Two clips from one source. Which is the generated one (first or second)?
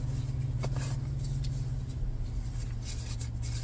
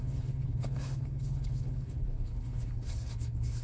second